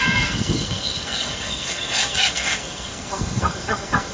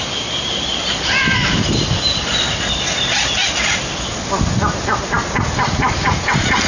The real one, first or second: second